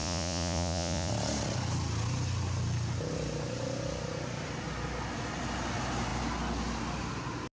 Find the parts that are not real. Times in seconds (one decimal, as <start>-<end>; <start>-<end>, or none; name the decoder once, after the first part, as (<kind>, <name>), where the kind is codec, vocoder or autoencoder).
0.0-1.1 (vocoder, Vocos)